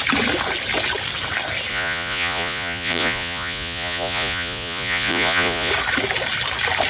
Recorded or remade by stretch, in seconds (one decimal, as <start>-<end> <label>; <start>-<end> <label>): 0.0-1.7 recorded; 1.7-5.7 remade; 5.7-6.9 recorded